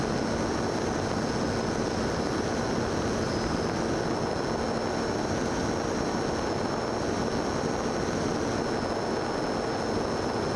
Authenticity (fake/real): real